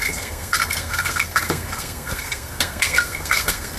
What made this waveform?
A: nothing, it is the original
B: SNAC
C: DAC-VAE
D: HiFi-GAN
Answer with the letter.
B